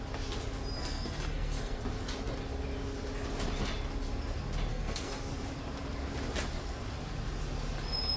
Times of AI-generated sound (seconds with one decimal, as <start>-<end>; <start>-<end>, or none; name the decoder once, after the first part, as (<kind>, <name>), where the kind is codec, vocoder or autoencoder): 0.8-1.8 (codec, SNAC); 4.7-5.2